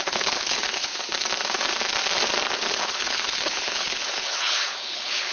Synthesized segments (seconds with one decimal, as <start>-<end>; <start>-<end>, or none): 0.0-0.9; 2.7-5.3